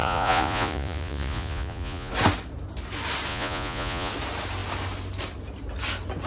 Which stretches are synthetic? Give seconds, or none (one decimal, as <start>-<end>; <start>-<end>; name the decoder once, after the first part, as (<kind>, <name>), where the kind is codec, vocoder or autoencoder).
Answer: 0.0-2.1 (vocoder, Vocos); 3.3-4.1